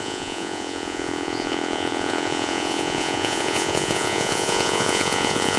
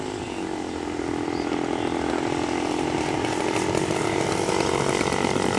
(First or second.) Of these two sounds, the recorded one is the second